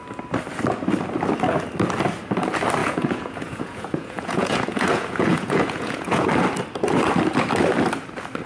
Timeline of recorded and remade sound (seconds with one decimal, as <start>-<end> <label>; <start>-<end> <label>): 0.0-2.8 recorded; 2.8-6.3 remade; 6.3-8.5 recorded